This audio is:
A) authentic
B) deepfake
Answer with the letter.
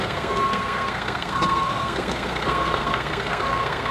B